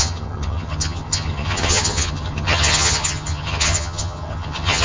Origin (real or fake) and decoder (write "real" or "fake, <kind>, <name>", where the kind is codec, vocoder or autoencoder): fake, vocoder, HiFi-GAN